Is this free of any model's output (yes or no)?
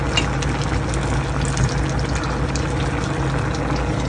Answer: yes